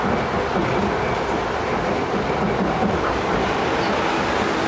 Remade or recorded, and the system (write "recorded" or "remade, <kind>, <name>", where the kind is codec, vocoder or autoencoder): recorded